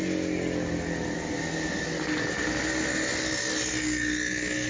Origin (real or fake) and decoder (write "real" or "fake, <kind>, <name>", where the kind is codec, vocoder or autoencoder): real